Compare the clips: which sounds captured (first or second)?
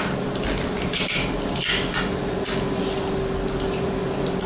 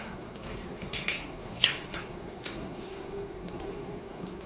first